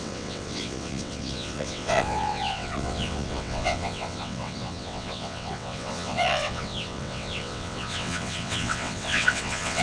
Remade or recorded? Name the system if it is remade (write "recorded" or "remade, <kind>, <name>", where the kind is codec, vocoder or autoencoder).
remade, vocoder, WaveNeXt